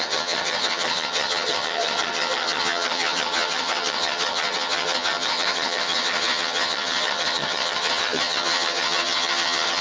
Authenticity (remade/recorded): remade